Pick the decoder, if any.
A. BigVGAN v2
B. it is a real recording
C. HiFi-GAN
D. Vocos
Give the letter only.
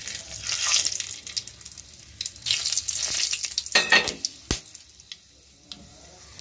B